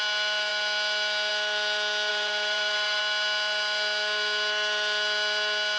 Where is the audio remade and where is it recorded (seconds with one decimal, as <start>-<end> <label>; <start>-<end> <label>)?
0.0-2.1 recorded; 2.1-3.0 remade; 3.0-5.8 recorded